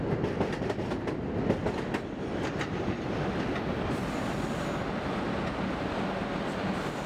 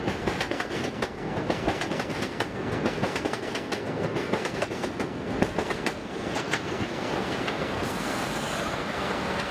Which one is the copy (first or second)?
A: second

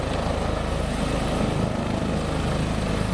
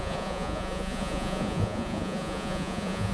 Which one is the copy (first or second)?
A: second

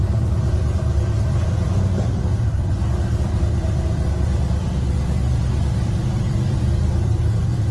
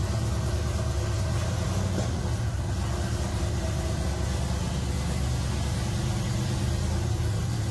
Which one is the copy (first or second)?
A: first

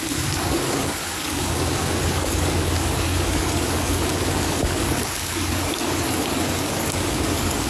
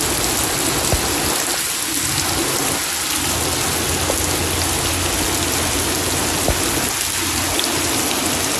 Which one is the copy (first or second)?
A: first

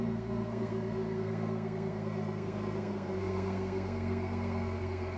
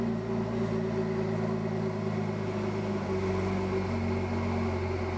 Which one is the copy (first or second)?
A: first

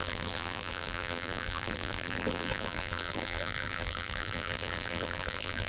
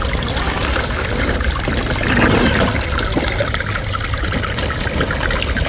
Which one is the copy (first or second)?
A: first